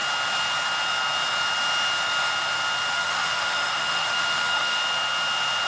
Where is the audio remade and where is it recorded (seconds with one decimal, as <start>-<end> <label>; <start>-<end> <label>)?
0.0-2.9 recorded; 2.9-4.8 remade; 4.8-5.7 recorded